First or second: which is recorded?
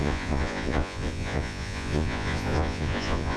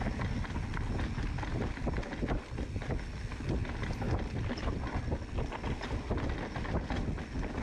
second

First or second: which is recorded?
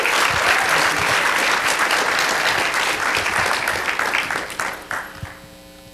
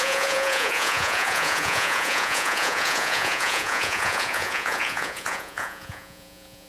first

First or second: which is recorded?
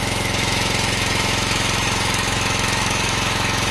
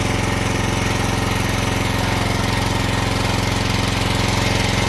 second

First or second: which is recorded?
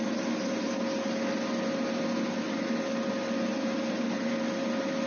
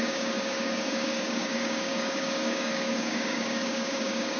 first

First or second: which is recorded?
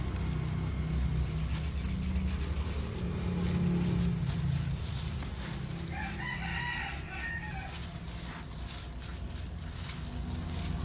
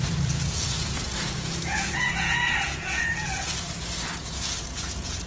first